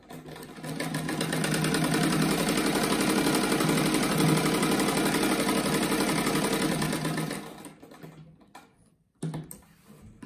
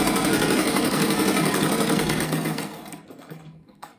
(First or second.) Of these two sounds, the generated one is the second